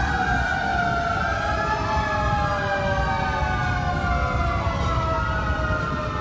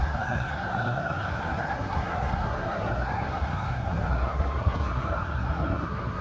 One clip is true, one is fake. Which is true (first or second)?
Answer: first